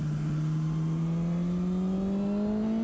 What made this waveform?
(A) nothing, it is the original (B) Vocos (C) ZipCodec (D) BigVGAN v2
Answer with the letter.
A